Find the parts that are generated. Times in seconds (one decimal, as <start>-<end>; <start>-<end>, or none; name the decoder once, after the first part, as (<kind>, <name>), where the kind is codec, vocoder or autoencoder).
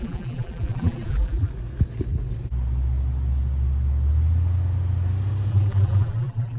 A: 0.0-1.5 (vocoder, BigVGAN v2); 5.5-6.6